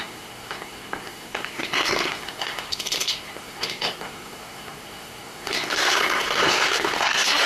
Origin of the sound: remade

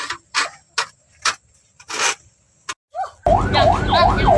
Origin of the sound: recorded